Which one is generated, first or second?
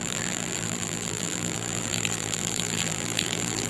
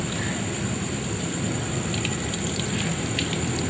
first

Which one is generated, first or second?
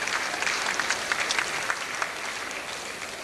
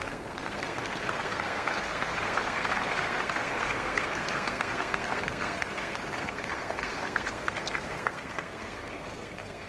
second